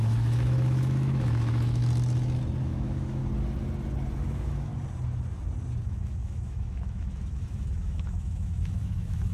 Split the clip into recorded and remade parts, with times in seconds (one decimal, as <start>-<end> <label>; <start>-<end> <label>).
0.0-1.8 remade; 1.8-2.6 recorded; 2.6-3.2 remade; 3.2-4.2 recorded; 4.2-4.7 remade; 4.7-5.8 recorded; 5.8-9.3 remade